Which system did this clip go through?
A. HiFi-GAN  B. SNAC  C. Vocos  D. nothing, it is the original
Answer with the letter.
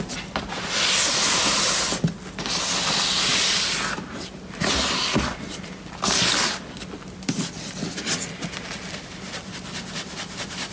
D